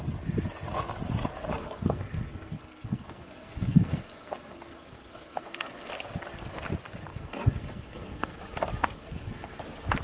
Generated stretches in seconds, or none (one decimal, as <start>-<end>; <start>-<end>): 1.6-5.9; 7.1-8.4; 8.8-9.6